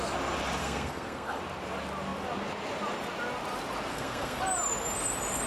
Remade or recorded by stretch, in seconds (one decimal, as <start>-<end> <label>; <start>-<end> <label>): 0.0-0.6 recorded; 0.6-1.4 remade; 1.4-3.9 recorded; 3.9-4.4 remade; 4.4-5.5 recorded